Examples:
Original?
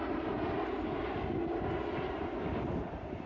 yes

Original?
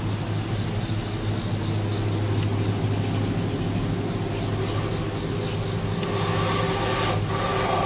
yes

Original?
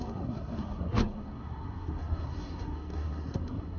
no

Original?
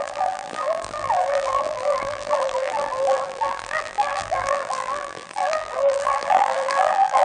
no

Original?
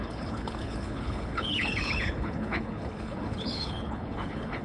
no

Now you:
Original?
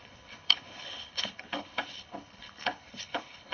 no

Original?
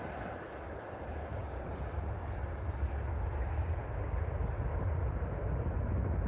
yes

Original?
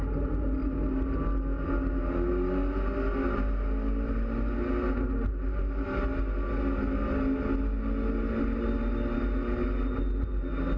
yes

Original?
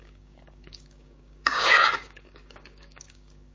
no